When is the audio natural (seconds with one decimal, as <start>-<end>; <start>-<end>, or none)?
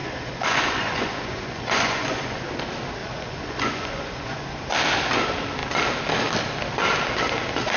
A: 2.4-3.0; 4.5-7.8